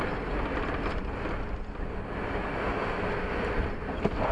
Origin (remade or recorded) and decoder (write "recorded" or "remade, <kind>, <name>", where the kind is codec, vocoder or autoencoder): recorded